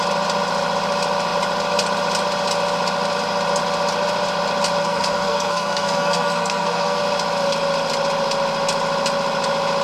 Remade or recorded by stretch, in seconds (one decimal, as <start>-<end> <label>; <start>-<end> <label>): 0.0-4.8 recorded; 4.8-7.0 remade; 7.0-9.8 recorded